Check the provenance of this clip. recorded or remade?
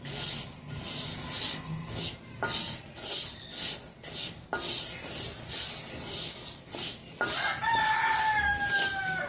recorded